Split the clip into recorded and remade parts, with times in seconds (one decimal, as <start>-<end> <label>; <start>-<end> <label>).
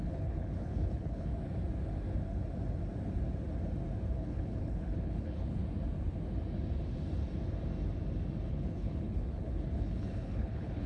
0.0-1.3 remade; 1.3-4.1 recorded; 4.1-5.6 remade; 5.6-8.5 recorded; 8.5-10.9 remade